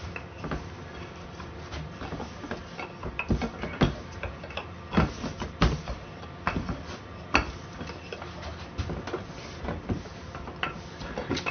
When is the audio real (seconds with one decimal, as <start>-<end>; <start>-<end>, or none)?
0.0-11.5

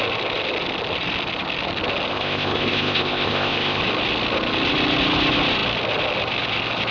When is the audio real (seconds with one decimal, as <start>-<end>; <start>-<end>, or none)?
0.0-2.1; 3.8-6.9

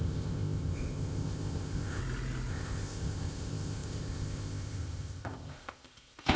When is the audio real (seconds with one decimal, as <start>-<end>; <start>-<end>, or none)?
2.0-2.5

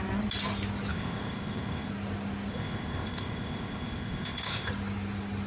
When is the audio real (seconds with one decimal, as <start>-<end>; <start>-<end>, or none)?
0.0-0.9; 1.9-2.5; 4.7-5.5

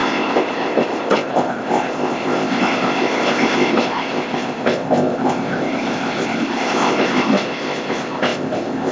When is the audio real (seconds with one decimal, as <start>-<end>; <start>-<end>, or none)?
none

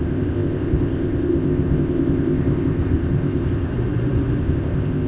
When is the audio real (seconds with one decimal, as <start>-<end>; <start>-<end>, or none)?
3.7-4.4

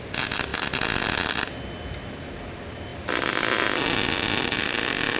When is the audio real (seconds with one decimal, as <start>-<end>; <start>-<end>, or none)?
0.0-5.2